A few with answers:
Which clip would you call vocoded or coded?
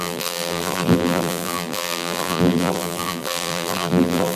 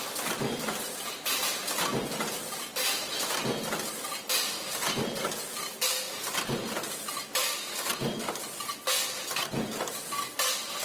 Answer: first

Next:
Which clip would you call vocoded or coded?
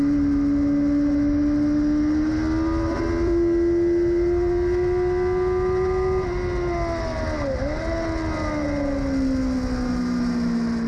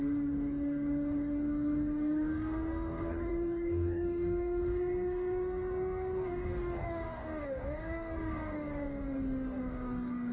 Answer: second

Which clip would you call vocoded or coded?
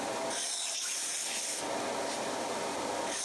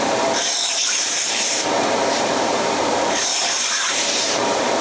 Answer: second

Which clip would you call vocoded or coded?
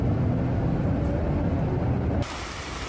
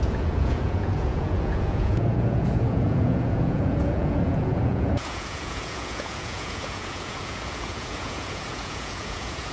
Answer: second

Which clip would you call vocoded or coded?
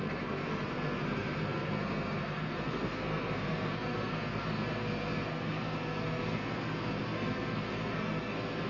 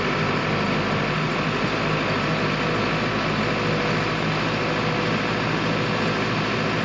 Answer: first